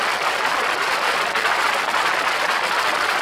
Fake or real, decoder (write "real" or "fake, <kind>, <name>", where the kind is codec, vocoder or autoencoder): real